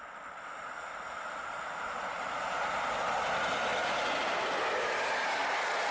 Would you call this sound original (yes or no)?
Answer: yes